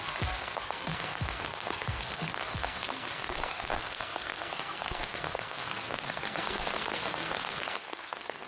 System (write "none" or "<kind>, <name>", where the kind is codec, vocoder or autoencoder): codec, SNAC